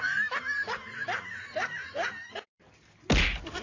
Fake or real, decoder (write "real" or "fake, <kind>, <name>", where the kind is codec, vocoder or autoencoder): real